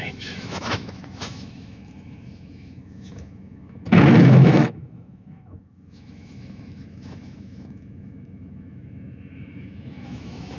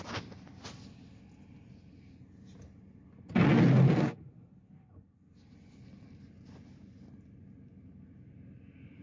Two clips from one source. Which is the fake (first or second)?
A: first